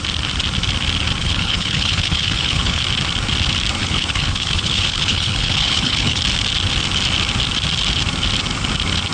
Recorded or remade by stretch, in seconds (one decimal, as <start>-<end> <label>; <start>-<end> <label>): 0.0-1.2 recorded; 1.2-2.8 remade; 2.8-3.8 recorded; 3.8-6.2 remade; 6.2-9.1 recorded